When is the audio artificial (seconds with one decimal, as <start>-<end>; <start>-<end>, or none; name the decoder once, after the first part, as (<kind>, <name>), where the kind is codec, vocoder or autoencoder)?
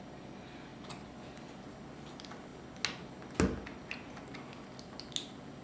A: none